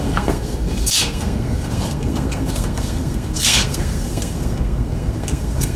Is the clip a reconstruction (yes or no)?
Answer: yes